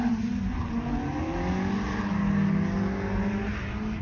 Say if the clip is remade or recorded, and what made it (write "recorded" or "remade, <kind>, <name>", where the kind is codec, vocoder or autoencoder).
recorded